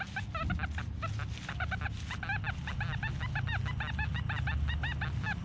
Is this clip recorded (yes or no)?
yes